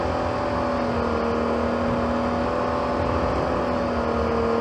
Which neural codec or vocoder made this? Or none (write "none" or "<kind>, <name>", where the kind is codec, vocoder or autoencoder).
none